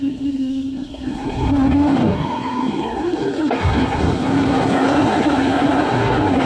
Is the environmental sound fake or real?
fake